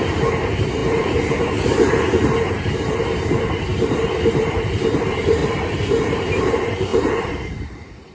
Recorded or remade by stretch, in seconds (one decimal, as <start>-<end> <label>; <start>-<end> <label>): 0.0-3.7 remade; 3.7-4.3 recorded; 4.3-5.4 remade; 5.4-6.0 recorded; 6.0-8.1 remade